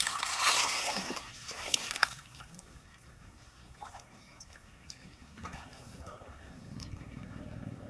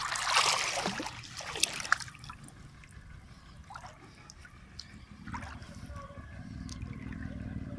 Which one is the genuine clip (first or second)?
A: second